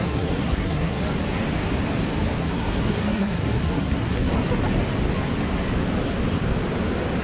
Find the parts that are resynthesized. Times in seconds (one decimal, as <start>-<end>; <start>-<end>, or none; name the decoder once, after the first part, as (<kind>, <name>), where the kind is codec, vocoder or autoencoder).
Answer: 0.0-1.0 (codec, SNAC); 2.4-4.3